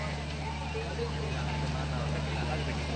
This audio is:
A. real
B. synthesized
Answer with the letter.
A